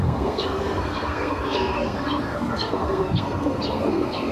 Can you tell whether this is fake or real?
fake